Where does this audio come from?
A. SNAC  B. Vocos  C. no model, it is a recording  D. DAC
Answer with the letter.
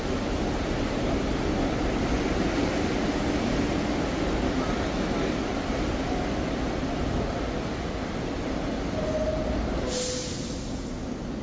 C